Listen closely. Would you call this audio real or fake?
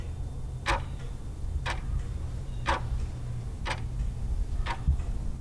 real